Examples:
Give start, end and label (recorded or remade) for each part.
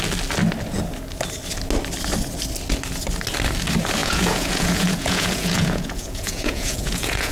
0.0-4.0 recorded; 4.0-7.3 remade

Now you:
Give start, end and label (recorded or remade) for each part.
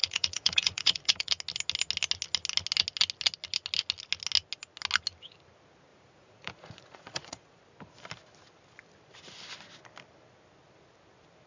0.0-1.3 remade; 1.3-5.9 recorded; 5.9-7.6 remade; 7.6-11.5 recorded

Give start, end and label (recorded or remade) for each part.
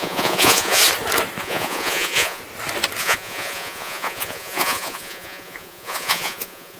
0.0-0.8 remade; 0.8-1.4 recorded; 1.4-2.4 remade; 2.4-3.0 recorded; 3.0-6.8 remade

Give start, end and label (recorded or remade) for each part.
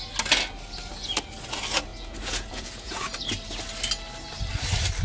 0.0-1.9 recorded; 1.9-3.1 remade; 3.1-5.0 recorded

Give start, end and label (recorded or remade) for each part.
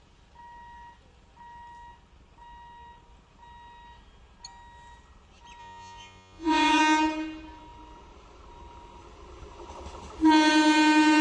0.0-5.6 recorded; 5.6-6.8 remade; 6.8-11.2 recorded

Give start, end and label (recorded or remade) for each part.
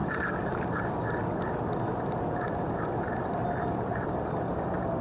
0.0-5.0 recorded